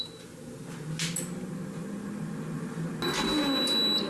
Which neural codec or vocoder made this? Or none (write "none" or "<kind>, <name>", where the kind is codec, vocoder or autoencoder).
none